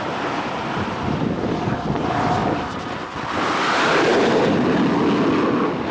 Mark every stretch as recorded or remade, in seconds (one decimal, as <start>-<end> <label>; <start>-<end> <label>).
0.0-4.1 recorded; 4.1-4.8 remade; 4.8-5.9 recorded